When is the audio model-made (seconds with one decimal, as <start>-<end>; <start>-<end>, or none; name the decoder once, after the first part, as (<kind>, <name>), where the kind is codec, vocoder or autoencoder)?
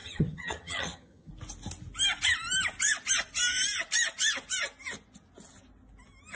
0.0-1.3 (vocoder, HiFi-GAN)